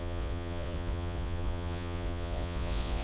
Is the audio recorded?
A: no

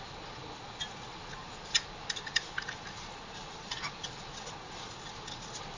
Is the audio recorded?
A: yes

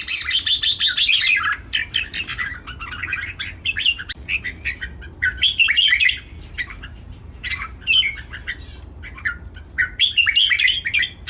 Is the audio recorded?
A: yes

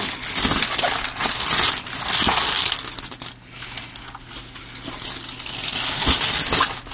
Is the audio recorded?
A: yes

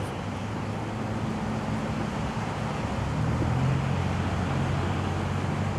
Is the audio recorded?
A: yes